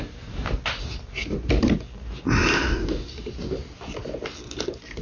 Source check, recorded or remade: recorded